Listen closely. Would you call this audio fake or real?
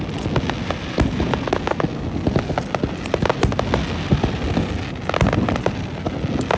real